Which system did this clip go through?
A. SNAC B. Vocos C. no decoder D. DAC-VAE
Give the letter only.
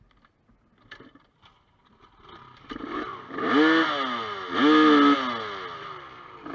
C